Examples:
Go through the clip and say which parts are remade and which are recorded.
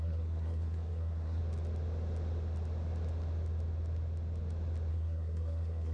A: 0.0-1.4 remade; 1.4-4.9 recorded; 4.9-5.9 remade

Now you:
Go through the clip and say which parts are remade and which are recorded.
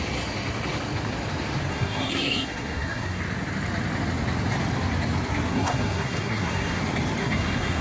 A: 0.0-1.7 recorded; 1.7-3.2 remade; 3.2-5.5 recorded; 5.5-6.8 remade; 6.8-7.2 recorded; 7.2-7.8 remade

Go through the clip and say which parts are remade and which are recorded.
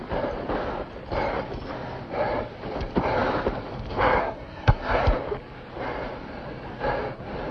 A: 0.0-4.2 recorded; 4.2-5.0 remade; 5.0-7.5 recorded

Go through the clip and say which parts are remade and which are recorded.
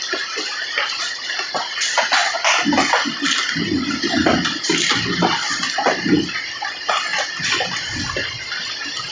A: 0.0-9.1 recorded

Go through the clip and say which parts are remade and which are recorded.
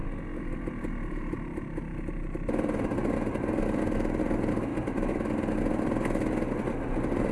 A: 0.0-7.3 recorded